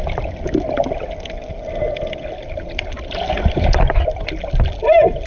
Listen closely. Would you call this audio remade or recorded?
recorded